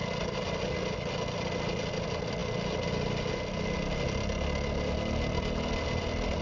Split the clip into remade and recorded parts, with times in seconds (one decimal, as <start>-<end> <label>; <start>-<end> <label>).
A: 0.0-6.4 recorded